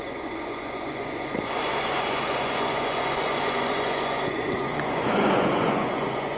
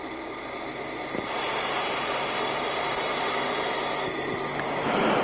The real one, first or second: second